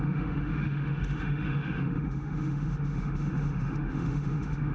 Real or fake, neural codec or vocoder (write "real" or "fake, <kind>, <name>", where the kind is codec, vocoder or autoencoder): fake, autoencoder, DAC-VAE